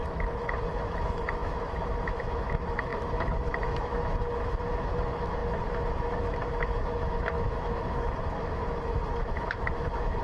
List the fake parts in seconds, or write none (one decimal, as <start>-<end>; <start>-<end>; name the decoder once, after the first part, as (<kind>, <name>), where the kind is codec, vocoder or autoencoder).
0.0-10.2 (autoencoder, DAC-VAE)